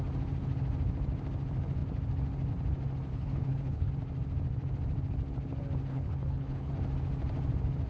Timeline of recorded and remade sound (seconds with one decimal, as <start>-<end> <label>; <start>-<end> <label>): 0.0-3.1 recorded; 3.1-3.9 remade; 3.9-5.9 recorded; 5.9-6.7 remade; 6.7-7.9 recorded